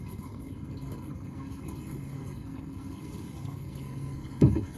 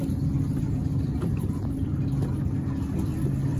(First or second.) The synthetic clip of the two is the first